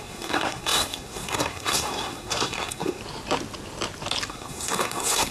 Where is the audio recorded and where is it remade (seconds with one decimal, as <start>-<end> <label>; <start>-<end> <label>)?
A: 0.0-3.0 remade; 3.0-4.3 recorded; 4.3-5.3 remade